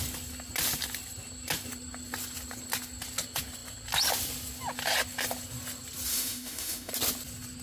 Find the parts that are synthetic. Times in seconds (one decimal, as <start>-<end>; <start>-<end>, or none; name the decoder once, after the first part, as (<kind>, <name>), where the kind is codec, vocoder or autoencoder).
6.1-6.9 (autoencoder, DAC-VAE)